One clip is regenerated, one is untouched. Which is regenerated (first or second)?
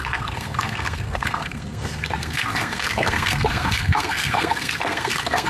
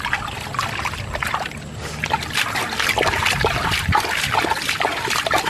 first